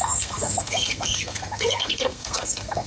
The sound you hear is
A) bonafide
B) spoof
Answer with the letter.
B